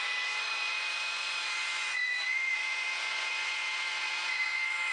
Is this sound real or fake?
fake